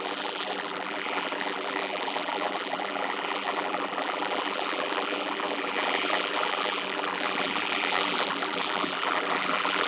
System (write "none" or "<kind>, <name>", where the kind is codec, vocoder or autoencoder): vocoder, BigVGAN v2